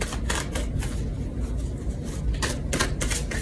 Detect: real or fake real